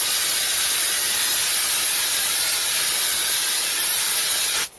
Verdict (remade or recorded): recorded